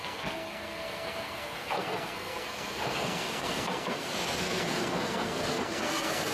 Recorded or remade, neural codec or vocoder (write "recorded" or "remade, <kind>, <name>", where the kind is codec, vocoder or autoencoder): remade, codec, SNAC